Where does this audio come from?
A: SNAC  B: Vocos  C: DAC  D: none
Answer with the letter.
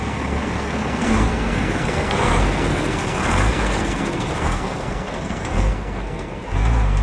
A